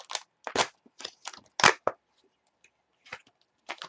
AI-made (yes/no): no